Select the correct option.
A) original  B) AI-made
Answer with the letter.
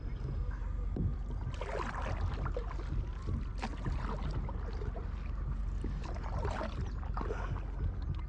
A